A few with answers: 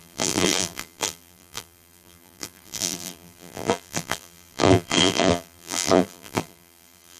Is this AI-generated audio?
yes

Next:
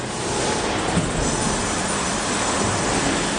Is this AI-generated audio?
no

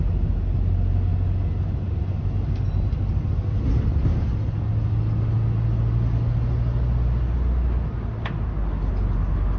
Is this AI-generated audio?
no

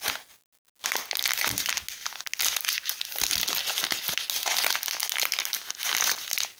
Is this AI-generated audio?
no